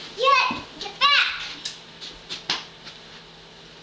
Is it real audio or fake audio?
real